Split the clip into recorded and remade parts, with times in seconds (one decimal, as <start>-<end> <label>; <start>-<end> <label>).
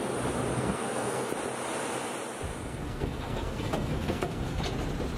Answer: 0.0-0.5 recorded; 0.5-1.3 remade; 1.3-2.5 recorded; 2.5-4.6 remade; 4.6-5.2 recorded